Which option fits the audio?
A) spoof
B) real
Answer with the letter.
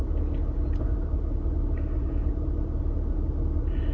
B